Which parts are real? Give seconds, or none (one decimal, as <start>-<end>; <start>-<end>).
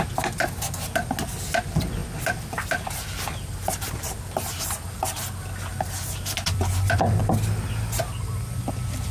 0.0-2.0; 4.6-5.7; 7.2-9.1